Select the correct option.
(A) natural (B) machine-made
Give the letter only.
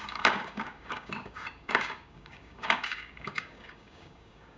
B